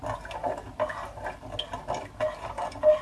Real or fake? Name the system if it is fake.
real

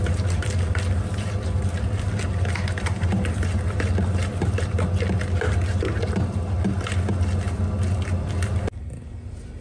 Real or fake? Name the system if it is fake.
real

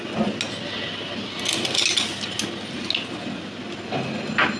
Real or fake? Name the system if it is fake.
real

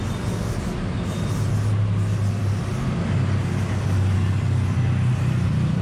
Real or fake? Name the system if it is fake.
real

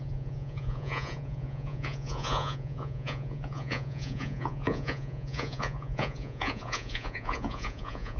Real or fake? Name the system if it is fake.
fake, vocoder, Vocos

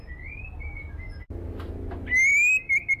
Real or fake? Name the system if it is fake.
real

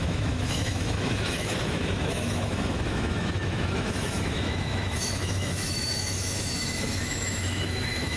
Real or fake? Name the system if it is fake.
fake, autoencoder, DAC-VAE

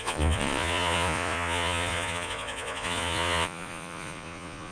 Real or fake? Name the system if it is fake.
fake, vocoder, Vocos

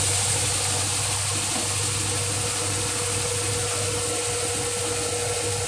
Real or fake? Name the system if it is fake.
real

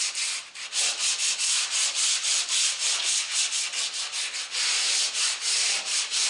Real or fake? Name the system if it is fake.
real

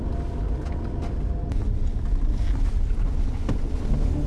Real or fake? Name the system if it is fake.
real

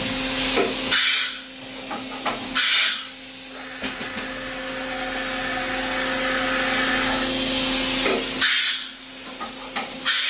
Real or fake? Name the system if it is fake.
real